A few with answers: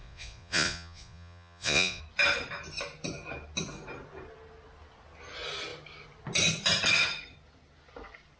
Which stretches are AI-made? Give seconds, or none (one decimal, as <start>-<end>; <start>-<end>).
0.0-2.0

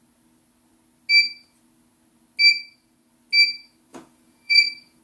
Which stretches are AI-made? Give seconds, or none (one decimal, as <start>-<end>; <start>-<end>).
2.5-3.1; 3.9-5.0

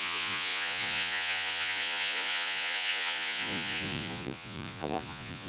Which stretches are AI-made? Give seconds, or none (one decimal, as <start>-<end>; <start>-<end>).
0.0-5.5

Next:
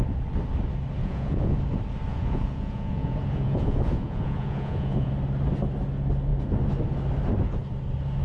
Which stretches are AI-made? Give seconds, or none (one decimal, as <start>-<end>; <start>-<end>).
1.0-1.6; 2.1-5.1

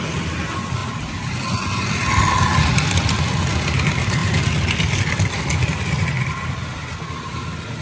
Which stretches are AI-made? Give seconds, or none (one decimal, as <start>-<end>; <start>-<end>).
none

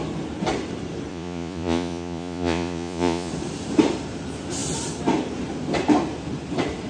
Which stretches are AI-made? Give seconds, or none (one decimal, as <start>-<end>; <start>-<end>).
1.1-3.3

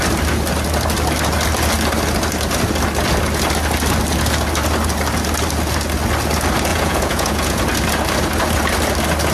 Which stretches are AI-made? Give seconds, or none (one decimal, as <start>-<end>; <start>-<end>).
6.7-7.6

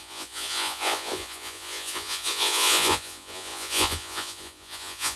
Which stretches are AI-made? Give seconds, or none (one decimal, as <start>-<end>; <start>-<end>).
0.0-5.2